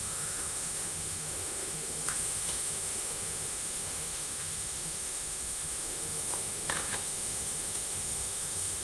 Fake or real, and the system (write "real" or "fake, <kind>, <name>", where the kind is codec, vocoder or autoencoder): fake, autoencoder, DAC-VAE